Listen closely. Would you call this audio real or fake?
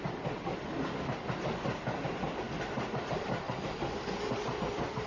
real